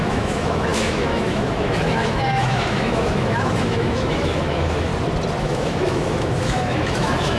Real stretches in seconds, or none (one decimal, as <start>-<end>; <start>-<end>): 4.9-5.4